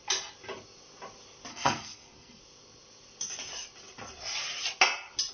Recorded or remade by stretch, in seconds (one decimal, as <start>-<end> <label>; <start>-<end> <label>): 0.0-1.5 recorded; 1.5-2.4 remade; 2.4-5.3 recorded